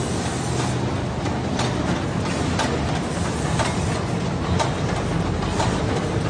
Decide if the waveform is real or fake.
real